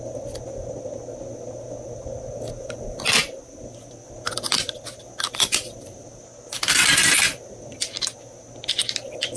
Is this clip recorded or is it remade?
recorded